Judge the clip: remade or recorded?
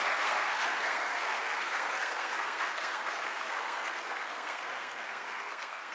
remade